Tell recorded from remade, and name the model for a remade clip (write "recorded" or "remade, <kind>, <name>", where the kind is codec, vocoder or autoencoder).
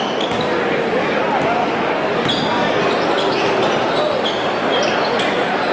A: recorded